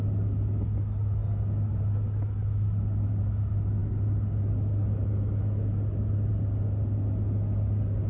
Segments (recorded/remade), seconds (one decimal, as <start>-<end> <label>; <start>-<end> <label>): 0.0-8.1 recorded